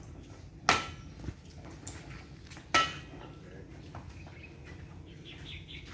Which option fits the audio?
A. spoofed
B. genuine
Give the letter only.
B